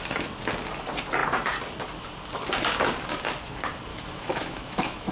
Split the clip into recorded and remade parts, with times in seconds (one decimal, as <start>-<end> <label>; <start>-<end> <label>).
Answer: 0.0-3.9 recorded; 3.9-5.1 remade